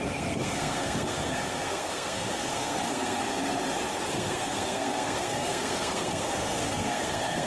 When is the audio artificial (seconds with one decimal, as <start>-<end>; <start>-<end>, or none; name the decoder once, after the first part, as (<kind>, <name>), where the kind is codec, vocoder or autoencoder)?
0.0-3.2 (codec, SNAC); 4.1-7.5